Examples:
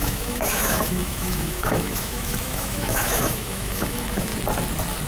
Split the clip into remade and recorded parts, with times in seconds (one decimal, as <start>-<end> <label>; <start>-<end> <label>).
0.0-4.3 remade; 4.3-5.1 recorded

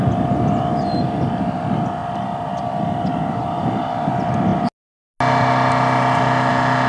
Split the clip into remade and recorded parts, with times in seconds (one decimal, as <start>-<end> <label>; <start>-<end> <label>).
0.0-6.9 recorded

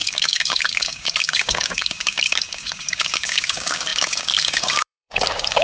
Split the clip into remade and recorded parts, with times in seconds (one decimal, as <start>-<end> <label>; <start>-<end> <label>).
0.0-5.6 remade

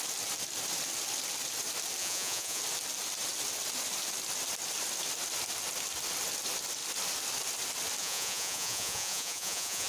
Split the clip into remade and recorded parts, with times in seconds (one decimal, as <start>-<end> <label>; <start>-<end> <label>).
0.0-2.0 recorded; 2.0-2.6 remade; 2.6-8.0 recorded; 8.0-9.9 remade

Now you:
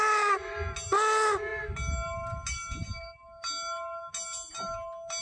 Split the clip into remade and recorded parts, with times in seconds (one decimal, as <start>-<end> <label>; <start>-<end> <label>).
0.0-5.2 recorded